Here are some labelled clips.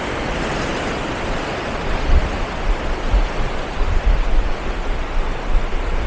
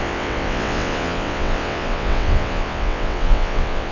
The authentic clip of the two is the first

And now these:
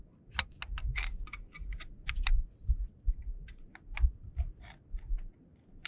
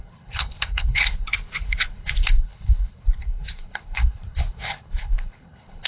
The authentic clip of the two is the first